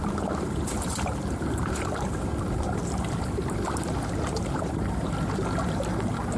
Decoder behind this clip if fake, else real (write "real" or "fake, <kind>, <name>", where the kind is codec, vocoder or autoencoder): real